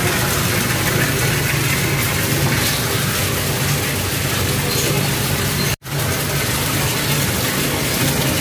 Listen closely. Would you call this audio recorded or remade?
recorded